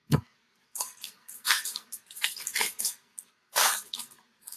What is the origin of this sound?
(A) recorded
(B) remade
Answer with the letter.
B